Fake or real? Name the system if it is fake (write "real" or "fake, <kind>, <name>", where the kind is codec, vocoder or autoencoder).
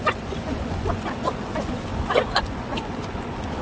fake, vocoder, Vocos